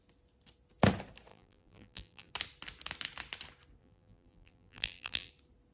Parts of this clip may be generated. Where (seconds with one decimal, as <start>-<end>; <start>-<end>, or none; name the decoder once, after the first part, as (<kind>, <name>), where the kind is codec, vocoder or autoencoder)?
1.3-2.3 (vocoder, BigVGAN v2); 3.8-5.3